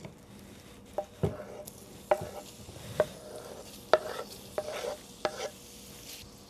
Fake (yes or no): no